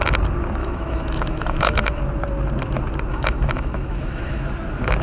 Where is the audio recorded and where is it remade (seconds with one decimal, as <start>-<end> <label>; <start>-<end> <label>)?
0.0-0.6 recorded; 0.6-2.0 remade; 2.0-3.1 recorded; 3.1-4.5 remade; 4.5-5.0 recorded